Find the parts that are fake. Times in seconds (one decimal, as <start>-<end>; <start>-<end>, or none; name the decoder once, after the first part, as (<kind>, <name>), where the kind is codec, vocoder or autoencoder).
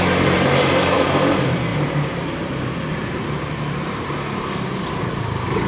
1.7-5.1 (vocoder, BigVGAN v2)